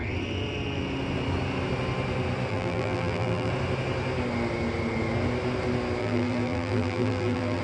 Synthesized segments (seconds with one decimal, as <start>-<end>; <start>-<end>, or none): 2.5-3.5; 6.0-7.6